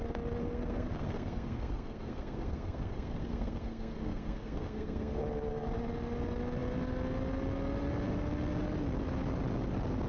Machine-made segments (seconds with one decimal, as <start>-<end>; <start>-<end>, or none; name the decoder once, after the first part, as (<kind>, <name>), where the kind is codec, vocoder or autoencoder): 0.4-5.2 (codec, SNAC)